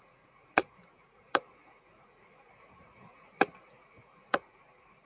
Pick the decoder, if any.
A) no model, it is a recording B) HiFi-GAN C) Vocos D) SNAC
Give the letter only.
C